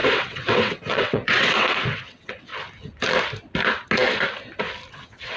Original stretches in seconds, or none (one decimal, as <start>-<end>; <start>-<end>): 2.5-4.9